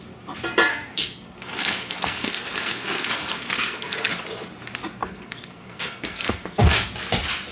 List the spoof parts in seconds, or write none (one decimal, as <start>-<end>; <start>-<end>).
0.7-4.1; 5.0-6.9

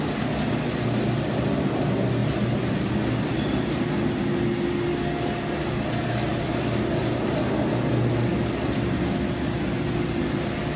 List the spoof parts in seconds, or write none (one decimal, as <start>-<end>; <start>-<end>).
none

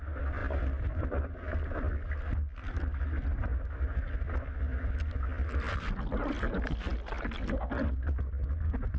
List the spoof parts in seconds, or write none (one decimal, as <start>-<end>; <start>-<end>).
none

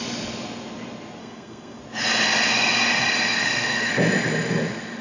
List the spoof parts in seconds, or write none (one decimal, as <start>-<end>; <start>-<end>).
1.2-1.8; 3.3-3.9

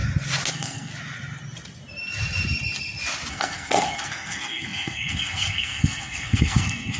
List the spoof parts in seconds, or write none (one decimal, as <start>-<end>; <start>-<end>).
0.5-0.9; 3.3-7.0

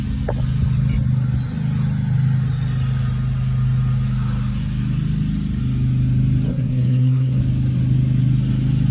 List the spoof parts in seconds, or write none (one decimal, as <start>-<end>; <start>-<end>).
6.5-7.4

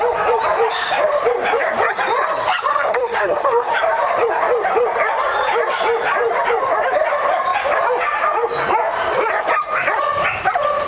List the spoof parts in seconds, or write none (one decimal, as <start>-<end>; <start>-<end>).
2.7-3.7

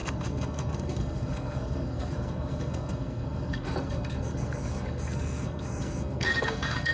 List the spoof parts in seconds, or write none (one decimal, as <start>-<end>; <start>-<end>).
0.0-6.9